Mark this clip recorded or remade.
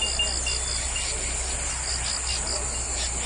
recorded